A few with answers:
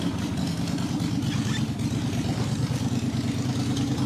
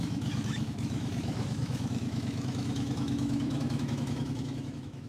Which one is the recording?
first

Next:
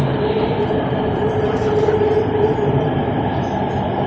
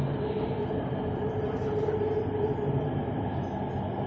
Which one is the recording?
second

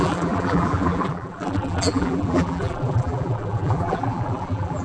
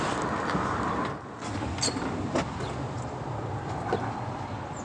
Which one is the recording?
second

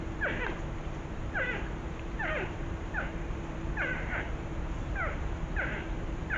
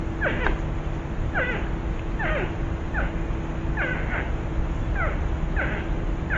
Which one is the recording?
second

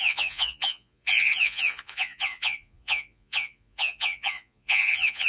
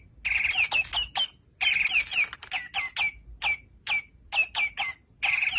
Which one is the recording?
second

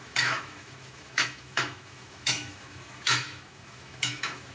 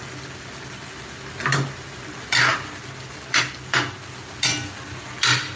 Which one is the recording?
second